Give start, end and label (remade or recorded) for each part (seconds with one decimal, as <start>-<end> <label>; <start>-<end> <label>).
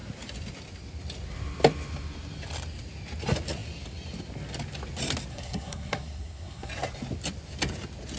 0.0-5.3 recorded; 5.3-6.7 remade; 6.7-8.2 recorded